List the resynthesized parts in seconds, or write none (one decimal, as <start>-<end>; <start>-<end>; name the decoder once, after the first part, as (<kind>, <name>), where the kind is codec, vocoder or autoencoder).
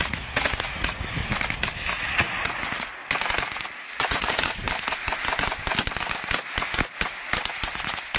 0.0-1.2 (vocoder, Vocos); 1.9-3.0; 3.8-4.6